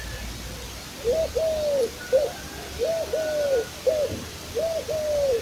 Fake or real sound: real